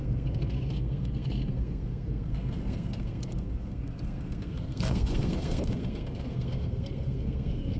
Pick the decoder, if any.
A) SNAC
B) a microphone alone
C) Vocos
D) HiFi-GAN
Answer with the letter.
A